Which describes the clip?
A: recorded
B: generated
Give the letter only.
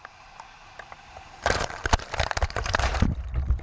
B